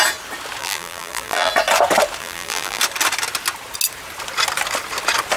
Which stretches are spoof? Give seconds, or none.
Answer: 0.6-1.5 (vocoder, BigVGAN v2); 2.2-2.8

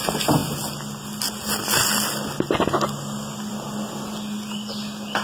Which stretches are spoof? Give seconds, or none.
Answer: none

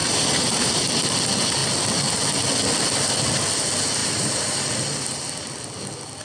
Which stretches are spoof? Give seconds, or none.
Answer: 0.0-0.8 (vocoder, BigVGAN v2); 4.0-4.6

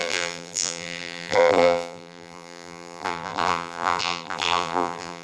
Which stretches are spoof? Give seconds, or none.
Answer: 0.0-5.2 (vocoder, BigVGAN v2)

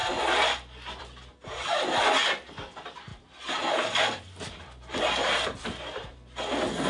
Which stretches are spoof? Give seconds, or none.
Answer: 0.0-1.0 (vocoder, BigVGAN v2); 3.1-5.0

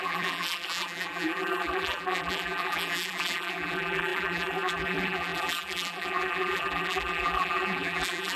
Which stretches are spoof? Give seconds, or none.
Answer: 0.0-8.4 (vocoder, BigVGAN v2)